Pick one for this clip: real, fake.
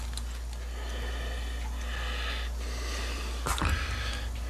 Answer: real